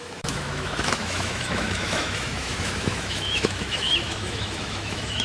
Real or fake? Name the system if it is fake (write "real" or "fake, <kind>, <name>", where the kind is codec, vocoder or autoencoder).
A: fake, autoencoder, DAC-VAE